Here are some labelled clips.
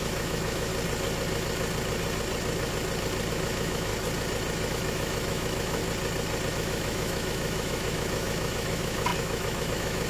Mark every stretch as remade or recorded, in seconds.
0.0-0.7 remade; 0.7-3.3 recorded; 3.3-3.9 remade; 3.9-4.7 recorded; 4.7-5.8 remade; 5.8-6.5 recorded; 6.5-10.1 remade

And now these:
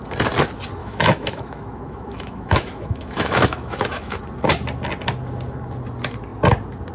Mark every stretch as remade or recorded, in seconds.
0.0-0.8 recorded; 0.8-4.2 remade; 4.2-6.9 recorded